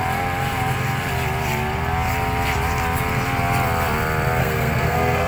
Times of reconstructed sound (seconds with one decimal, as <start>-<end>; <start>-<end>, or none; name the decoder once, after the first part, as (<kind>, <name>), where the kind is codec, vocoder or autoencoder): 4.4-5.3 (codec, SNAC)